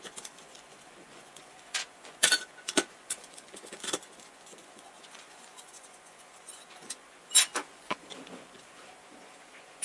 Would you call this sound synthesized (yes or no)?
yes